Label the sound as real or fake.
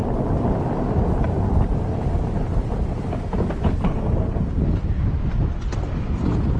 real